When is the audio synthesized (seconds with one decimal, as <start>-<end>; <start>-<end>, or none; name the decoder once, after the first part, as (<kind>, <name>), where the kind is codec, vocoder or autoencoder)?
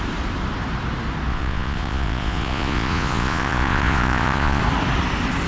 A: 1.3-4.6 (vocoder, Vocos)